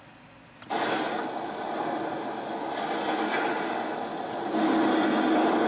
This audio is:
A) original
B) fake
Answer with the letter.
A